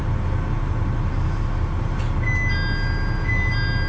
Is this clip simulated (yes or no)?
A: no